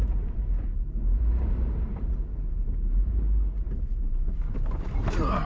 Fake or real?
fake